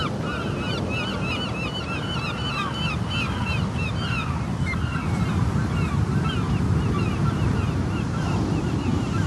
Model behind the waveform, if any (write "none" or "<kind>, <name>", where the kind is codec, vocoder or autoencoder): none